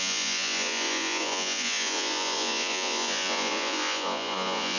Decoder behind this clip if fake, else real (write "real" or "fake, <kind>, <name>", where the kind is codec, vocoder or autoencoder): fake, vocoder, Vocos